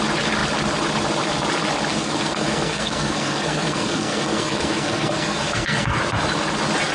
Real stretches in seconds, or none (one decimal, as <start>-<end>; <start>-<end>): 0.0-1.9; 6.0-6.9